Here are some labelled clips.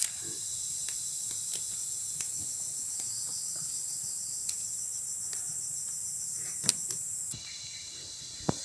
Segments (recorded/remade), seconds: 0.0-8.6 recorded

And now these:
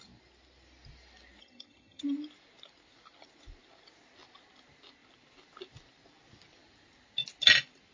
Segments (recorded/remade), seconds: 0.0-1.4 recorded; 1.4-2.0 remade; 2.0-7.9 recorded

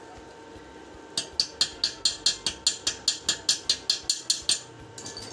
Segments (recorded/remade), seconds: 0.0-5.3 recorded

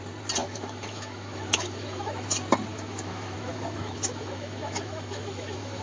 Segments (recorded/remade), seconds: 0.0-0.4 recorded; 0.4-2.3 remade; 2.3-2.7 recorded; 2.7-5.8 remade

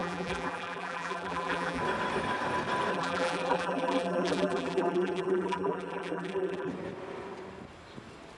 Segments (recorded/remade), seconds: 0.0-1.8 remade; 1.8-2.9 recorded; 2.9-6.7 remade; 6.7-8.4 recorded

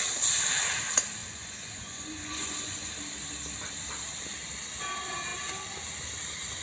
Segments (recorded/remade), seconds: 0.0-1.2 recorded; 1.2-2.9 remade; 2.9-6.6 recorded

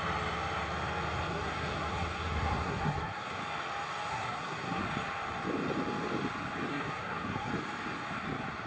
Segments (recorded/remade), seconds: 0.0-1.3 recorded; 1.3-3.4 remade; 3.4-4.1 recorded; 4.1-4.8 remade; 4.8-6.7 recorded; 6.7-7.5 remade; 7.5-8.7 recorded

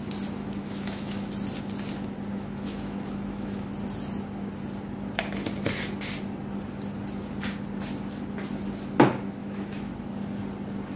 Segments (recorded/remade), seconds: 0.0-0.4 recorded; 0.4-1.3 remade; 1.3-2.3 recorded; 2.3-3.7 remade; 3.7-9.4 recorded; 9.4-9.9 remade; 9.9-11.0 recorded